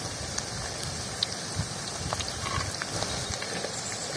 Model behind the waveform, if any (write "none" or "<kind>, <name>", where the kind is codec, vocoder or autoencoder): none